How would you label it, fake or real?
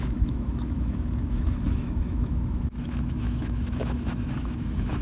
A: fake